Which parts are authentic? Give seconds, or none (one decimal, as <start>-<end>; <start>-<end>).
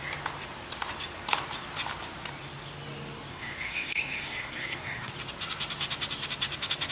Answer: 0.0-3.3; 5.1-6.9